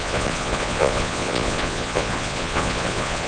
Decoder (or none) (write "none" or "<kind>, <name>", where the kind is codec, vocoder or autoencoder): vocoder, Vocos